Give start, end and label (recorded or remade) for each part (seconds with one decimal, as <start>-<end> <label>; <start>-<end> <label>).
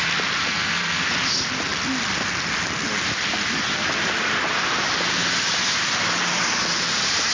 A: 0.0-0.4 recorded; 0.4-1.1 remade; 1.1-7.3 recorded